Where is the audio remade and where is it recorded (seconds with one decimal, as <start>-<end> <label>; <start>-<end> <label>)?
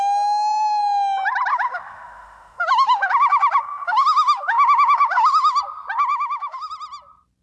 0.0-1.5 recorded; 1.5-5.6 remade; 5.6-6.1 recorded; 6.1-6.7 remade; 6.7-7.4 recorded